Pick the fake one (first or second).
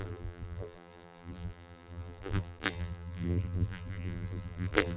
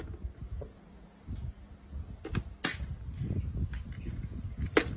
first